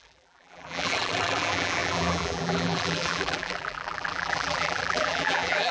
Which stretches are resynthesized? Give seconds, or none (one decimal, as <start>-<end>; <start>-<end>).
0.0-5.7